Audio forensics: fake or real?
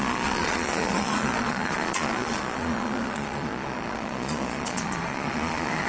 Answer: fake